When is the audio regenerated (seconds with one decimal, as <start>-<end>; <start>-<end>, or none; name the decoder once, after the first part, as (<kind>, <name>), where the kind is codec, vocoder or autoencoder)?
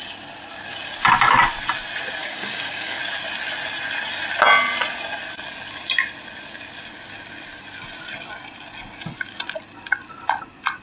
2.2-3.0 (codec, DAC)